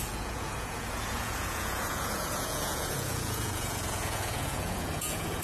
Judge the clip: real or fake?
fake